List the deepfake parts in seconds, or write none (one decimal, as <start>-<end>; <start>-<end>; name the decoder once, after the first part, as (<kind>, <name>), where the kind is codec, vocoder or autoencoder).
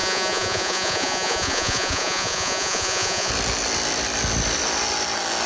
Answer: 0.0-3.3 (vocoder, Vocos)